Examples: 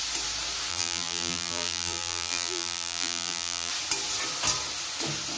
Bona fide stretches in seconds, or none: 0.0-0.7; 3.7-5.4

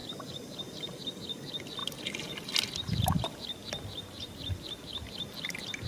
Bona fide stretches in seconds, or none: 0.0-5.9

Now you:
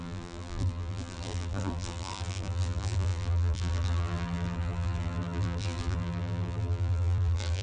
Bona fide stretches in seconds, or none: none

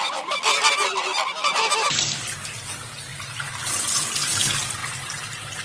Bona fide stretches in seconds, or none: 0.0-3.1; 3.6-4.8

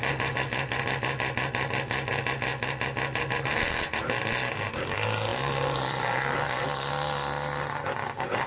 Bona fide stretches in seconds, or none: 0.0-5.3; 6.9-8.5